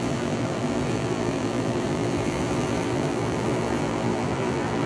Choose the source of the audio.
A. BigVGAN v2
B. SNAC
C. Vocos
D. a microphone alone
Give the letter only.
A